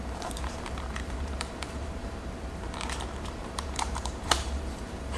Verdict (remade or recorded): remade